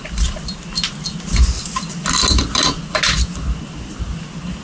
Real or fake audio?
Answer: real